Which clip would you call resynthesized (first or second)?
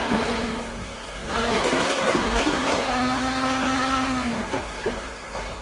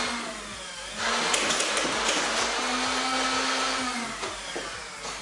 first